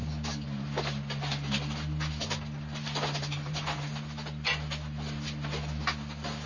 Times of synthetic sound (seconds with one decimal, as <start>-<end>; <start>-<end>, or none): none